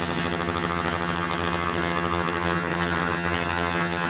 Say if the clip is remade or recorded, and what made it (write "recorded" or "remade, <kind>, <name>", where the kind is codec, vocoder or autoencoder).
remade, vocoder, HiFi-GAN